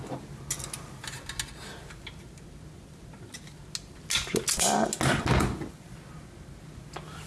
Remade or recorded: recorded